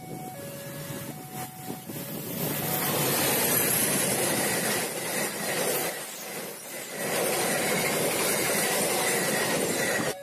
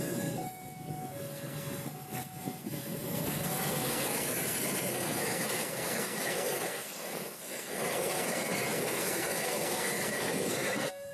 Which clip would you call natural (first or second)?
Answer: first